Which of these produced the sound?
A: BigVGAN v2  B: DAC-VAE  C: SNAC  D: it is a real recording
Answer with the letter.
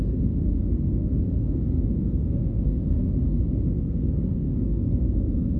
C